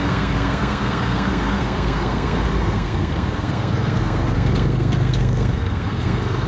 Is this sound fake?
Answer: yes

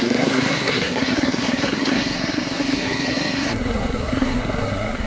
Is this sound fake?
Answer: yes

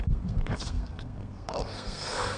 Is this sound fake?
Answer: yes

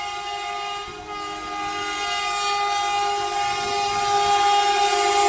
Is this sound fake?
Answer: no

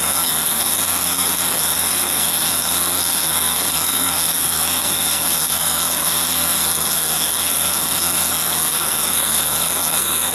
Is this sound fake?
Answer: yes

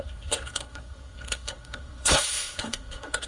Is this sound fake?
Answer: yes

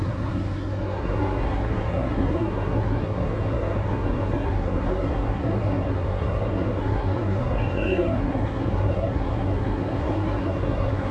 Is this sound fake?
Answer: yes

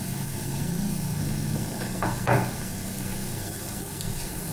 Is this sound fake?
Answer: yes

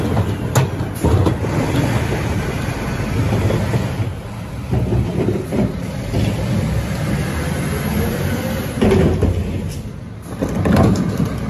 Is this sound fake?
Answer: no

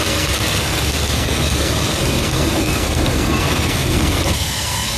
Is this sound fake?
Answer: yes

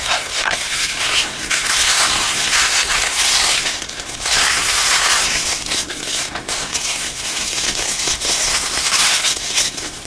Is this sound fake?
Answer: yes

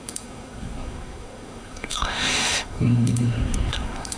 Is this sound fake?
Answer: yes